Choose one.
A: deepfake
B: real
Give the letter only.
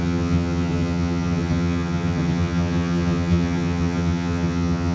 A